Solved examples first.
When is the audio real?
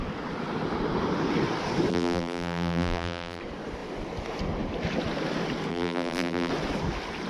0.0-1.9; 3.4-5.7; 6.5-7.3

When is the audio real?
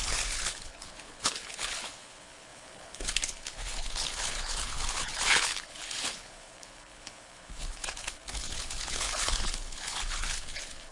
none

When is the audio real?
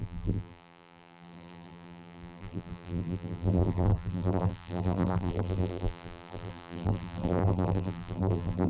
none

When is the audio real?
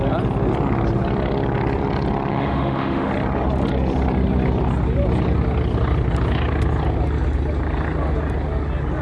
0.0-2.3; 3.1-9.0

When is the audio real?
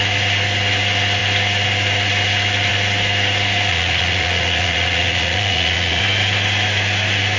0.0-3.7; 6.0-7.4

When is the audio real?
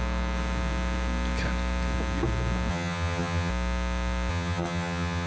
0.0-2.7; 3.5-4.3